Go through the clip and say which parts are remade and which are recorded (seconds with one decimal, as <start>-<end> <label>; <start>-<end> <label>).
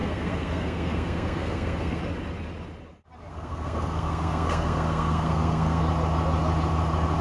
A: 0.0-2.0 remade; 2.0-3.3 recorded; 3.3-5.8 remade; 5.8-7.2 recorded